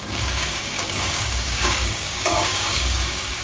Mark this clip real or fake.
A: fake